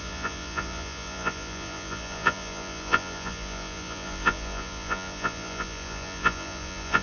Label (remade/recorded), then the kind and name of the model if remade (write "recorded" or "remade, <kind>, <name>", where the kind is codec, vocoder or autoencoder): remade, vocoder, Vocos